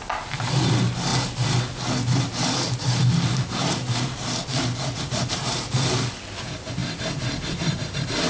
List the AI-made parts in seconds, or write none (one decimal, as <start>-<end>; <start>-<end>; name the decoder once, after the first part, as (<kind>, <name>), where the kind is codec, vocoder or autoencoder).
0.0-1.1 (vocoder, BigVGAN v2); 1.6-8.3